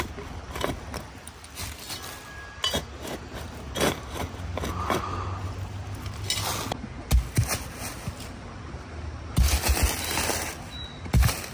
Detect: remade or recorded recorded